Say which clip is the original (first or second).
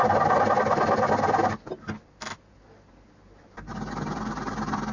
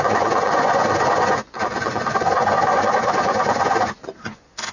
first